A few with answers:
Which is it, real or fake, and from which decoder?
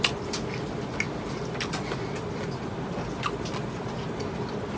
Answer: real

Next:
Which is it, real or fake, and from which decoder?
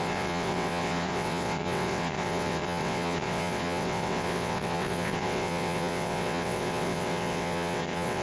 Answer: fake, vocoder, WaveNeXt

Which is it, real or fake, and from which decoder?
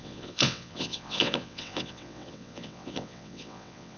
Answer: fake, vocoder, WaveNeXt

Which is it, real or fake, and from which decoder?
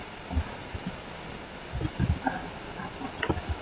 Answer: real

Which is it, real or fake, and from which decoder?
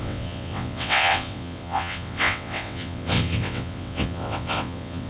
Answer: fake, vocoder, WaveNeXt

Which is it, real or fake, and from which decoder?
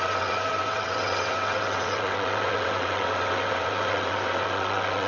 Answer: fake, vocoder, WaveNeXt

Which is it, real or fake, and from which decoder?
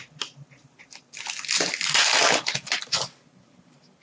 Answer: real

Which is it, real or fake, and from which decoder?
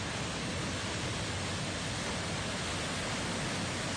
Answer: real